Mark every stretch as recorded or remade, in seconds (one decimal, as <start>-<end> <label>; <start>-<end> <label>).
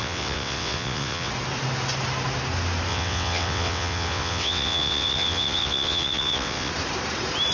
0.0-1.3 remade; 1.3-2.9 recorded; 2.9-6.7 remade; 6.7-7.5 recorded